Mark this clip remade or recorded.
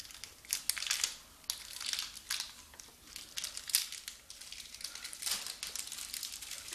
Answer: recorded